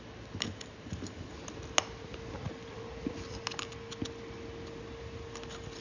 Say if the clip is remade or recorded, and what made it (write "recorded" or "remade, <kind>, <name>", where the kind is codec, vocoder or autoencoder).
recorded